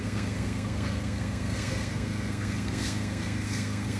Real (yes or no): no